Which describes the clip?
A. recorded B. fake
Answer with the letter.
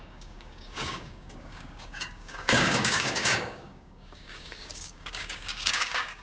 B